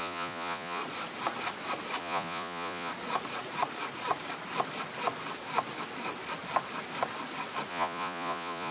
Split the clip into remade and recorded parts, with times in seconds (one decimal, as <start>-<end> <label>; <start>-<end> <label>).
0.0-0.8 remade; 0.8-2.0 recorded; 2.0-2.9 remade; 2.9-7.7 recorded; 7.7-8.7 remade